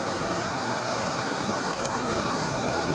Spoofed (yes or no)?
yes